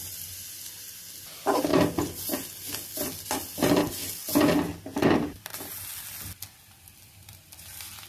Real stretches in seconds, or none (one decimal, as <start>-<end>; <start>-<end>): 0.0-8.1